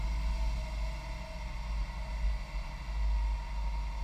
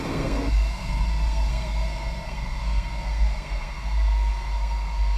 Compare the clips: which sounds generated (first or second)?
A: second